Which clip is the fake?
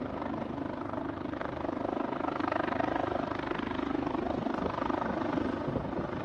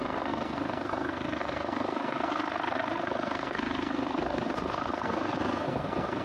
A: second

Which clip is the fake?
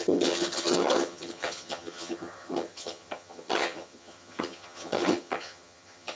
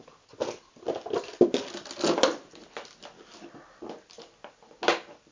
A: first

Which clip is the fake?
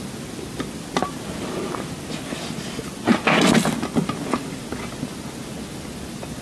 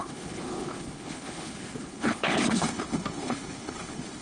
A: second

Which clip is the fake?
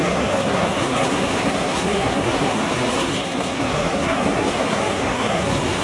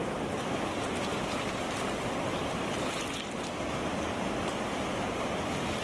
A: first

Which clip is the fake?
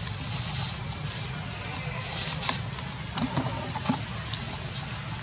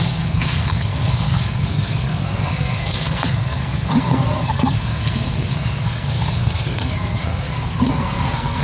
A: second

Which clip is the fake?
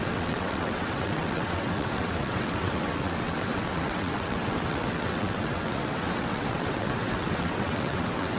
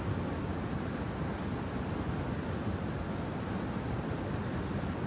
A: first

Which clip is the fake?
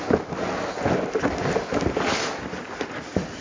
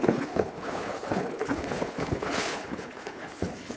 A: second